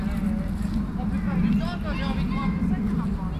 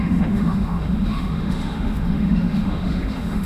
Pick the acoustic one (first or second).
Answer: first